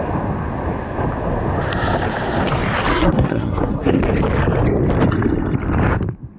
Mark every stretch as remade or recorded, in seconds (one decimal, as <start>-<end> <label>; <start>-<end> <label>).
0.0-2.9 recorded; 2.9-4.0 remade; 4.0-6.4 recorded